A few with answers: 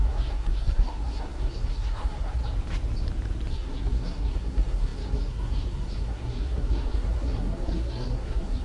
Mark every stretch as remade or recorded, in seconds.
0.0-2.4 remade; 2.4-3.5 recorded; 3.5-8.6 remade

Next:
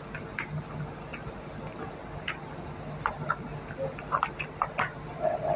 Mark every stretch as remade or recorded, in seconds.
0.0-5.6 recorded

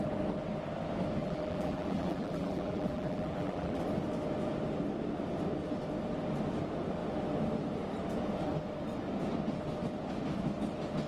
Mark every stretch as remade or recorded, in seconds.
0.0-1.2 recorded; 1.2-3.8 remade; 3.8-11.1 recorded

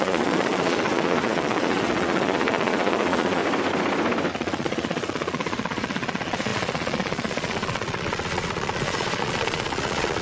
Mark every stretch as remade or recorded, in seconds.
0.0-3.4 remade; 3.4-4.3 recorded; 4.3-10.2 remade